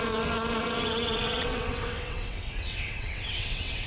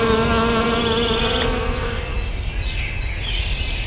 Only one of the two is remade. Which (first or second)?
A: first